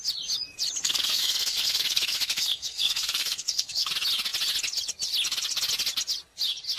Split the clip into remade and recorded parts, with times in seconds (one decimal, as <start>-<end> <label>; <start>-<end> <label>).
0.0-0.8 recorded; 0.8-3.9 remade; 3.9-6.8 recorded